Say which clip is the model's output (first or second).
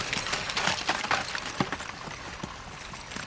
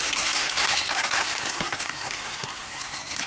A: second